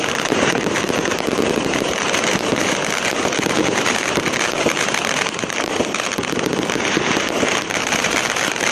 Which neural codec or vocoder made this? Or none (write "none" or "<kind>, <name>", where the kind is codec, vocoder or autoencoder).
vocoder, BigVGAN v2